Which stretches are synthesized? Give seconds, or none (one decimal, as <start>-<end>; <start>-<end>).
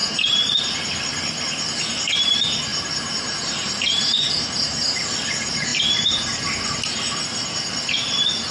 0.0-0.6; 2.7-5.1